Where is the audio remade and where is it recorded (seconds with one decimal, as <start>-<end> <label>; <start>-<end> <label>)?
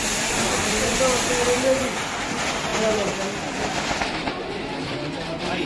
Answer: 0.0-0.9 remade; 0.9-1.7 recorded; 1.7-2.7 remade; 2.7-4.0 recorded; 4.0-5.7 remade